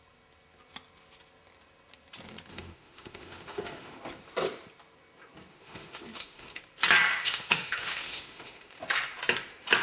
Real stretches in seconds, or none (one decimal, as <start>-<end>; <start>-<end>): 0.0-2.5; 4.0-5.5; 6.6-7.1; 8.8-9.8